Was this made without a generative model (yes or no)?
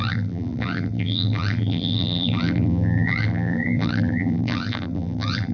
no